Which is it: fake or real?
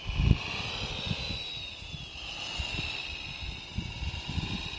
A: real